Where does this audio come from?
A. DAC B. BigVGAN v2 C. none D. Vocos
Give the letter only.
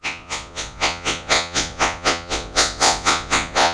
D